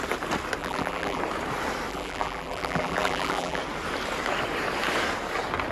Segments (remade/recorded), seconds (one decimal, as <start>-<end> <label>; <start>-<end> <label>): 0.0-0.6 recorded; 0.6-1.2 remade; 1.2-1.9 recorded; 1.9-3.6 remade; 3.6-5.7 recorded